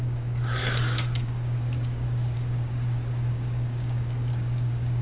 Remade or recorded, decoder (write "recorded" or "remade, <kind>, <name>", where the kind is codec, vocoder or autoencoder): remade, codec, DAC